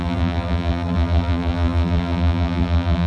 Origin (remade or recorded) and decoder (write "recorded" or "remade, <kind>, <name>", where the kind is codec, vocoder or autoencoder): remade, vocoder, BigVGAN v2